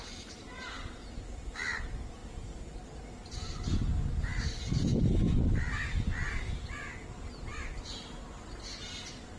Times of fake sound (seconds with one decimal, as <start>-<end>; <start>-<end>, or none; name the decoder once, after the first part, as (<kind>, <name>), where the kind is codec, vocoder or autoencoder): none